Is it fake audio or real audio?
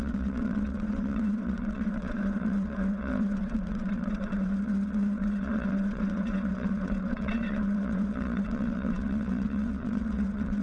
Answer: fake